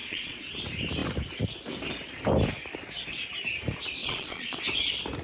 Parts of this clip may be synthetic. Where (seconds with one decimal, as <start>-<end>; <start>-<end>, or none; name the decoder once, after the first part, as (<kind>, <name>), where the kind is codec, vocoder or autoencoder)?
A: 0.0-0.5 (vocoder, Vocos); 4.0-4.6